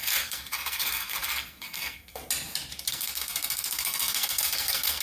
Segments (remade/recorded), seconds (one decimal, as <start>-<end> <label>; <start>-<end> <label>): 0.0-2.2 remade; 2.2-2.9 recorded; 2.9-5.0 remade